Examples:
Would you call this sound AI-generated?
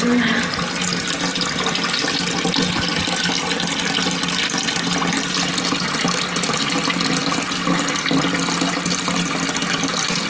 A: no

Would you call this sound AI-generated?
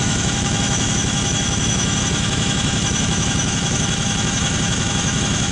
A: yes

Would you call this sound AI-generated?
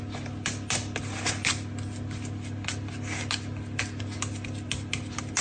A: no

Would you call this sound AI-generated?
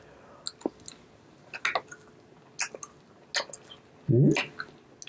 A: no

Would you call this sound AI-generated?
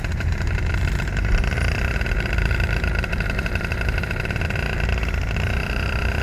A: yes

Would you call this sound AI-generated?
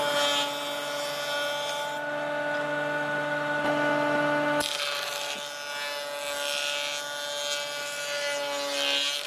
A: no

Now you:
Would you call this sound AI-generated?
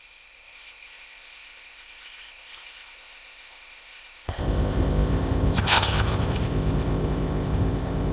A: yes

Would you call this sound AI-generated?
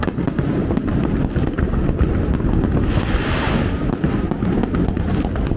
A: no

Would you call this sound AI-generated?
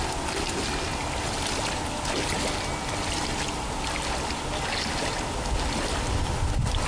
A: no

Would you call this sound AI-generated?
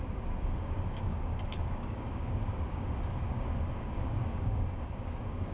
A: yes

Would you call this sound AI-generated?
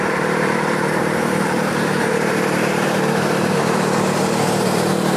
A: yes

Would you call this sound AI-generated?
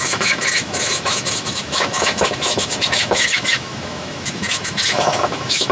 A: yes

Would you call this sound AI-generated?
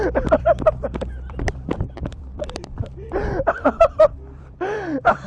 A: yes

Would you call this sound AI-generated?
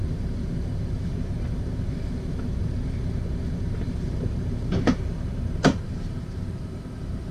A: yes